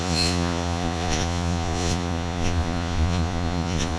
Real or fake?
fake